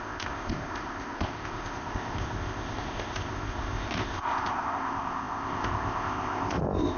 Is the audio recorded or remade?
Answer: remade